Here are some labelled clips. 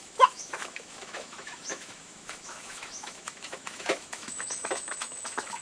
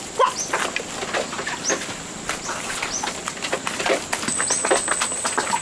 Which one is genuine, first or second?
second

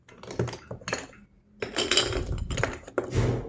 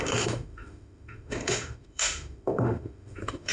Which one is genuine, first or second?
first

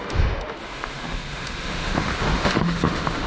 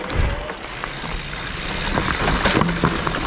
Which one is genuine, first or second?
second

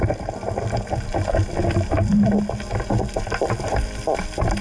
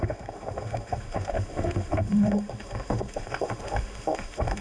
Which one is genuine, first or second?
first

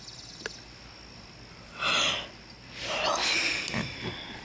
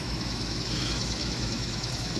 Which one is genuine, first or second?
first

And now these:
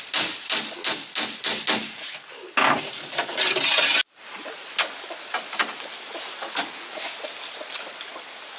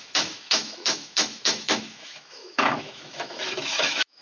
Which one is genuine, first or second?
first